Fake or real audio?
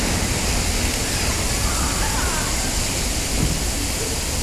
real